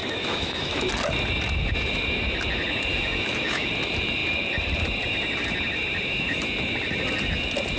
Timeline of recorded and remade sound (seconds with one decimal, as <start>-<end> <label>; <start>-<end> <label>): 0.0-0.9 remade; 0.9-2.9 recorded; 2.9-3.7 remade; 3.7-7.8 recorded